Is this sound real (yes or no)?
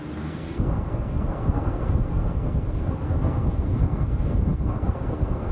no